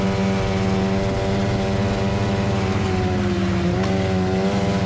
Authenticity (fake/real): real